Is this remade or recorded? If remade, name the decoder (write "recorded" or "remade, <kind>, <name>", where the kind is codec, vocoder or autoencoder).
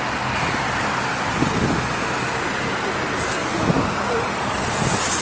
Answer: recorded